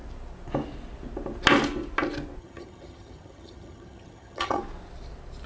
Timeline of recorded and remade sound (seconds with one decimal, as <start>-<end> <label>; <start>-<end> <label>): 0.0-2.4 recorded; 2.4-4.6 remade; 4.6-5.5 recorded